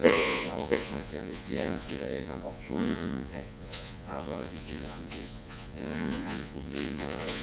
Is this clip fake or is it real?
fake